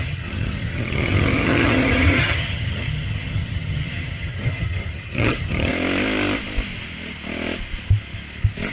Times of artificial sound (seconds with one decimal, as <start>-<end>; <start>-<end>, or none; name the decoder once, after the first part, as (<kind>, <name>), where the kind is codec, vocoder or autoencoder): 0.0-5.7 (vocoder, HiFi-GAN)